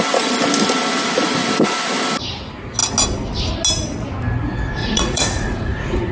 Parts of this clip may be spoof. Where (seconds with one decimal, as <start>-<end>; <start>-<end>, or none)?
4.8-6.1